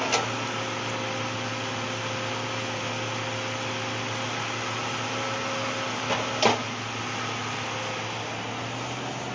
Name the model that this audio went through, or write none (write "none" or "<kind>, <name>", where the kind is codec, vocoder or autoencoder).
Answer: none